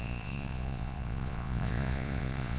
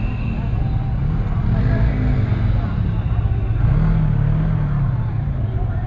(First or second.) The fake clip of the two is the first